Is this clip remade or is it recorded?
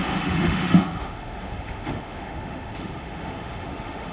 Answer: remade